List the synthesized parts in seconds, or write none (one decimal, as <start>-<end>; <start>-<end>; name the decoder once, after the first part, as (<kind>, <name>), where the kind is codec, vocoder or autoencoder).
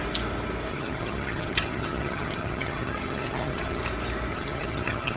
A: 0.7-3.8 (vocoder, HiFi-GAN); 4.3-5.2